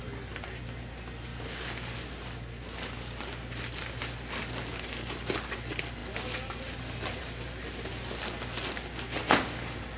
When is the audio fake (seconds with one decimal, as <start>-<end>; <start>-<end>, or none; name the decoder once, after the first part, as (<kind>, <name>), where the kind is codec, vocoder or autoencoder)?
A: none